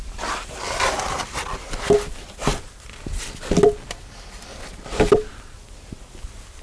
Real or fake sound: real